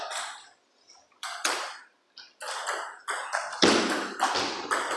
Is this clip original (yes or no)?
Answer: no